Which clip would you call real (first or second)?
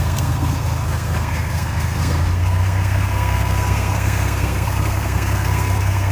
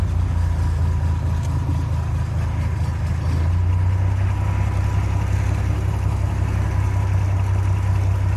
second